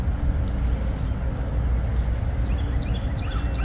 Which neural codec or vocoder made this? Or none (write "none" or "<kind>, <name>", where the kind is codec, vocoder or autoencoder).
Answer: none